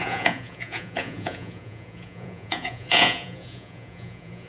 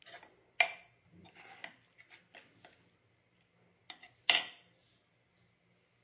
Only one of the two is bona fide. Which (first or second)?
second